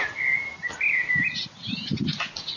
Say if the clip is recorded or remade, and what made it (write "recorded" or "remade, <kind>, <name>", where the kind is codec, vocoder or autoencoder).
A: recorded